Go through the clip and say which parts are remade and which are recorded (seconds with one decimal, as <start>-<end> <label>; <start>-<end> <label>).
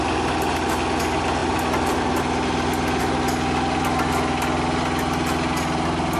0.0-6.2 recorded